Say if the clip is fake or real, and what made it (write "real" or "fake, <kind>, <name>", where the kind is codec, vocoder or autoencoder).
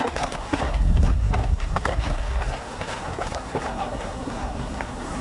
fake, codec, SNAC